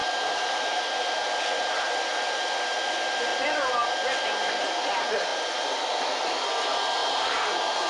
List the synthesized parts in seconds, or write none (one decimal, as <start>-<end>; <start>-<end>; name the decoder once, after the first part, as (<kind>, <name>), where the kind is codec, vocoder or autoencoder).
0.0-0.8 (vocoder, BigVGAN v2); 3.3-3.9; 5.3-6.5; 7.0-7.9